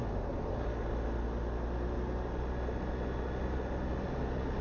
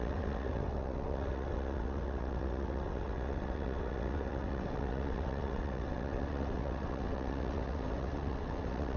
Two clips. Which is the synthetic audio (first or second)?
second